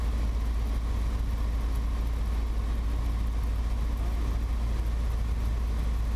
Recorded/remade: recorded